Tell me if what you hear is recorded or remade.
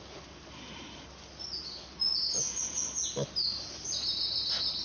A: recorded